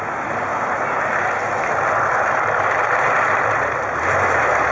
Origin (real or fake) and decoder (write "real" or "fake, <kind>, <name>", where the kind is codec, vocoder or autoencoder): real